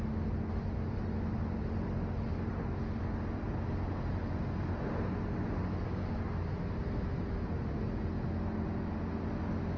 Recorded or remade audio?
recorded